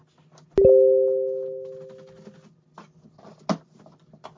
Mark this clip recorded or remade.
recorded